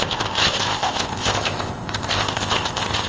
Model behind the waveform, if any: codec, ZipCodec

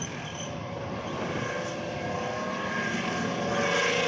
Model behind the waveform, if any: none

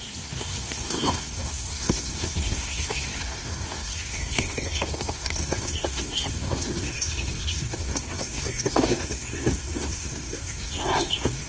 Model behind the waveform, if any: codec, SNAC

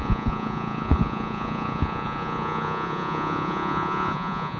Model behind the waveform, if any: vocoder, Vocos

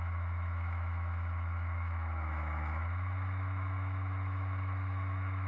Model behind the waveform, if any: autoencoder, DAC-VAE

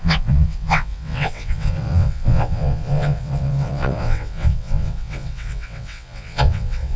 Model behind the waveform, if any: vocoder, WaveNeXt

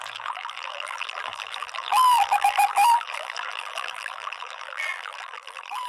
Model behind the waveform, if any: vocoder, BigVGAN v2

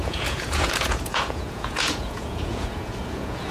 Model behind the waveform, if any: vocoder, Vocos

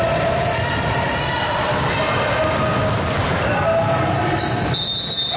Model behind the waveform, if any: none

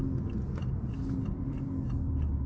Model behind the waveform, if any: none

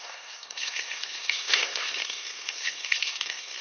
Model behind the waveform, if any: codec, SNAC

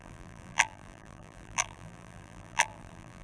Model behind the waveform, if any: vocoder, BigVGAN v2